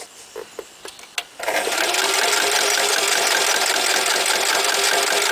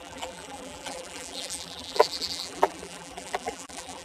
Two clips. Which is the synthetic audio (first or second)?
second